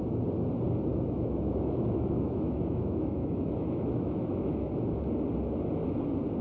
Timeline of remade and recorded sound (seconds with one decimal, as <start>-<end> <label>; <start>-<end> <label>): 0.0-0.9 recorded; 0.9-4.7 remade; 4.7-6.4 recorded